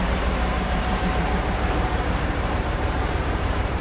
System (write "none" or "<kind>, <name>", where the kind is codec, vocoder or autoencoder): vocoder, BigVGAN v2